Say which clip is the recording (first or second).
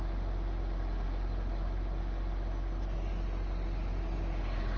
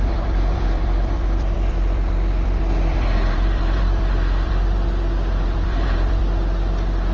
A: first